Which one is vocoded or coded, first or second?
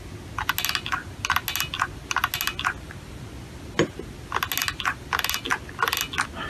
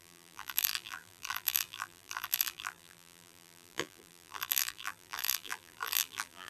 second